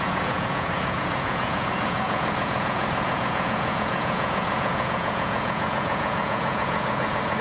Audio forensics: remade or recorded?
remade